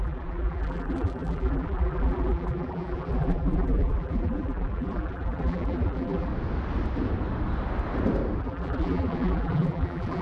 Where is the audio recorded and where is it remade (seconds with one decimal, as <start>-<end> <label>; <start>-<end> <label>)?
0.0-6.3 remade; 6.3-8.4 recorded; 8.4-10.2 remade